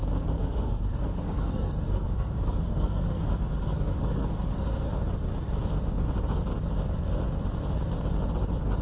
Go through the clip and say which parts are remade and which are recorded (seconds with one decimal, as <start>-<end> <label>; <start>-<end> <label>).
0.0-0.4 recorded; 0.4-4.9 remade; 4.9-8.8 recorded